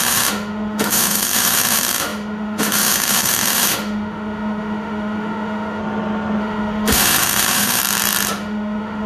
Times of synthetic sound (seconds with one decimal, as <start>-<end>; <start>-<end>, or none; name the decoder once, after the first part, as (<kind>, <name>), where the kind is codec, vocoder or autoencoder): 0.0-5.8 (autoencoder, DAC-VAE); 6.4-7.8; 8.4-9.1